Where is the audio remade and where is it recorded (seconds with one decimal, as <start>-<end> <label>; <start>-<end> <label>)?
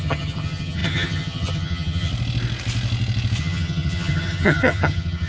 0.0-2.1 remade; 2.1-3.4 recorded; 3.4-5.3 remade